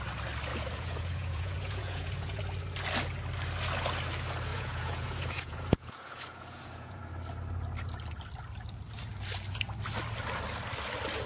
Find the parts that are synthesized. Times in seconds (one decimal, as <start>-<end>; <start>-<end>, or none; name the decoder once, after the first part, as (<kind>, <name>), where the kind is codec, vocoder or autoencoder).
0.5-2.4 (vocoder, Vocos); 4.5-7.0